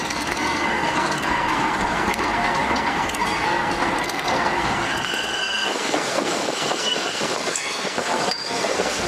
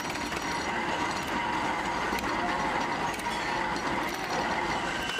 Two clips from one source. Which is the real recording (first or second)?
second